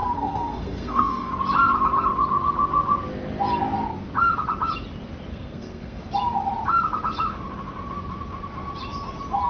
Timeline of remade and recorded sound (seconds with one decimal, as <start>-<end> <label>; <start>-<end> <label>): 0.0-1.3 remade; 1.3-5.3 recorded; 5.3-6.0 remade; 6.0-9.5 recorded

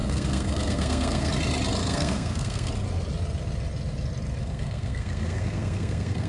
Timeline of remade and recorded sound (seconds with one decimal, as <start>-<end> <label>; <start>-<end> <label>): 0.0-1.3 remade; 1.3-1.8 recorded; 1.8-2.7 remade; 2.7-4.4 recorded; 4.4-6.3 remade

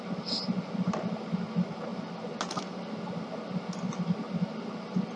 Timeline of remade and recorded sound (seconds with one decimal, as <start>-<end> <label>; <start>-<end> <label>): 0.0-5.2 recorded

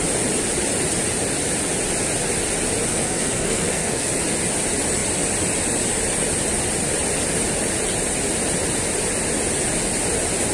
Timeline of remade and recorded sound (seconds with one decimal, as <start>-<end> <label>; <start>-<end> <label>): 0.0-2.9 recorded; 2.9-4.1 remade; 4.1-10.5 recorded

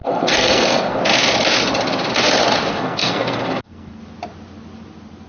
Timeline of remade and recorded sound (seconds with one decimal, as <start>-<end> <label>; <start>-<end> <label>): 0.0-1.0 remade; 1.0-2.7 recorded; 2.7-4.0 remade; 4.0-5.3 recorded

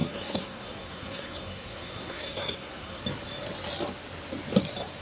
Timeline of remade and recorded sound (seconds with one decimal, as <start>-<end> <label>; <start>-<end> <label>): 0.0-3.0 remade; 3.0-5.0 recorded

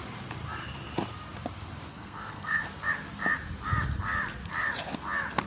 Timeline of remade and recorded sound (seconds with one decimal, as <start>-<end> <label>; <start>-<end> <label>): 0.0-1.9 recorded; 1.9-2.6 remade; 2.6-5.5 recorded

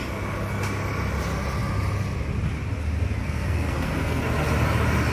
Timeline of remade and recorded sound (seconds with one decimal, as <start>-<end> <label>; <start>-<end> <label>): 0.0-3.2 recorded; 3.2-4.2 remade; 4.2-5.1 recorded